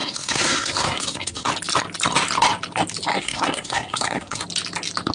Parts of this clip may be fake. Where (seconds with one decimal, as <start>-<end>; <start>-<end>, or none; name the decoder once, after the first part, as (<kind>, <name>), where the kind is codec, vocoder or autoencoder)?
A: 0.0-1.5 (codec, SNAC); 3.1-4.4

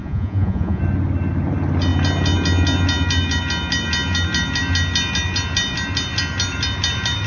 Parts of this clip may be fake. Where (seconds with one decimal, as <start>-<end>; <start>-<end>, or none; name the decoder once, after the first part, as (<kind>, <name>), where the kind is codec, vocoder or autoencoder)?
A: 0.0-0.8 (vocoder, Vocos)

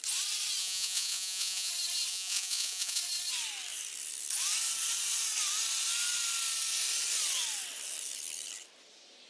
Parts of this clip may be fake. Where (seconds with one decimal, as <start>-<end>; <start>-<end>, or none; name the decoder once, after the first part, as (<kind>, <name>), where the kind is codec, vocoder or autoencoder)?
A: 0.6-1.7 (vocoder, Vocos); 2.1-3.0

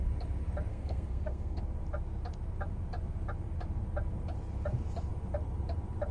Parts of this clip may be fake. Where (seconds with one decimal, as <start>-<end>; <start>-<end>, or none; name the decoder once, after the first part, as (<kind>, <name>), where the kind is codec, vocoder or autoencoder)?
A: 0.7-1.6 (codec, SNAC)

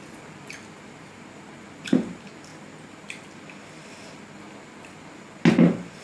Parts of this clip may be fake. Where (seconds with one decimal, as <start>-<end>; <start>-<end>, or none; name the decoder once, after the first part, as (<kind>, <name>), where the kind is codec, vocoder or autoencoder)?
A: none

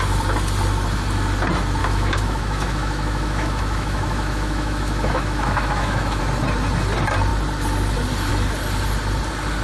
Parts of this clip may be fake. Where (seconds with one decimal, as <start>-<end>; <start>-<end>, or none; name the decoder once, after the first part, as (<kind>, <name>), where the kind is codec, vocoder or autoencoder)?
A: 1.8-6.2 (autoencoder, DAC-VAE)

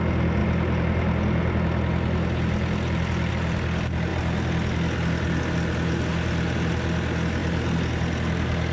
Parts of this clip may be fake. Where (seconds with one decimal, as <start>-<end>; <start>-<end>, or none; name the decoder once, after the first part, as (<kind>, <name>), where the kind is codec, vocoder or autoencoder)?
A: none

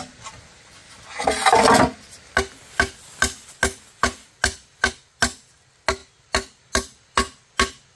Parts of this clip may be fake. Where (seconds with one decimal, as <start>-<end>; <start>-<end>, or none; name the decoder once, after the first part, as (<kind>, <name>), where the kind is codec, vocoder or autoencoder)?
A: none